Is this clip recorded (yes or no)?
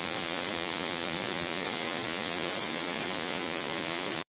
no